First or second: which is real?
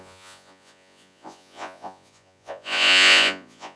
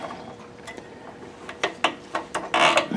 second